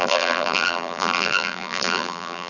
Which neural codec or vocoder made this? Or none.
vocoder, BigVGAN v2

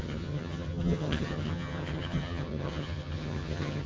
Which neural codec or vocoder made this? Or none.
vocoder, HiFi-GAN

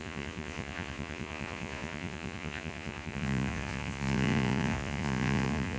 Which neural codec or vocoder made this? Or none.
vocoder, Vocos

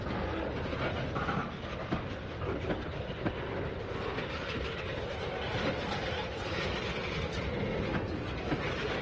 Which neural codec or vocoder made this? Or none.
none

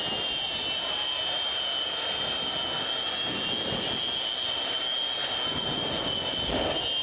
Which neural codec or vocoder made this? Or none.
none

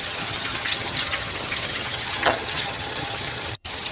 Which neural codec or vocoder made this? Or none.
vocoder, HiFi-GAN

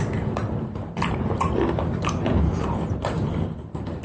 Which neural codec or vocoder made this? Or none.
none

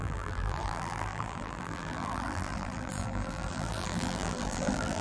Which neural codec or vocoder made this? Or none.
vocoder, BigVGAN v2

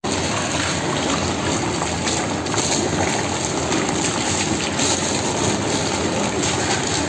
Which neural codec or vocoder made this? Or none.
none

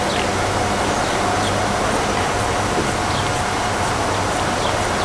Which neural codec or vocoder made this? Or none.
none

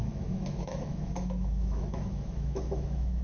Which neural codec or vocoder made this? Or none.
autoencoder, DAC-VAE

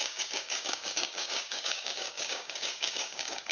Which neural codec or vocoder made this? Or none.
codec, DAC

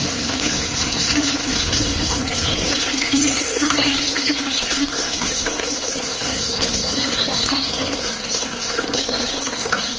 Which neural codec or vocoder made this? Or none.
codec, SNAC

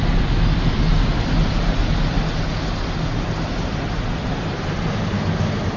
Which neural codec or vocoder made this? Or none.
none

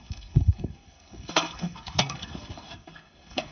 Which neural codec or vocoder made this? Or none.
codec, SNAC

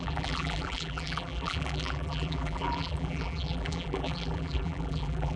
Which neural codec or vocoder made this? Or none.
vocoder, BigVGAN v2